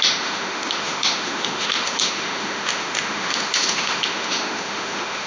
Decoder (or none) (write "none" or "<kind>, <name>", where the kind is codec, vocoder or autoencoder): autoencoder, DAC-VAE